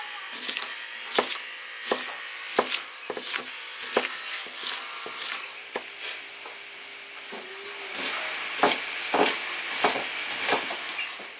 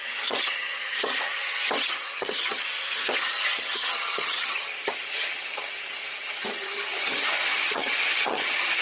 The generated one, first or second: second